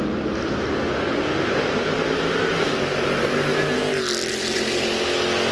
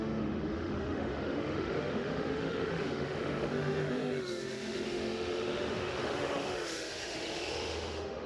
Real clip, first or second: first